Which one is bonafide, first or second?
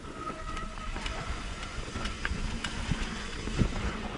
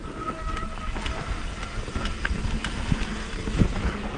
second